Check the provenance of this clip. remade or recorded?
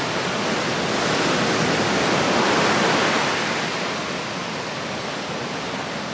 recorded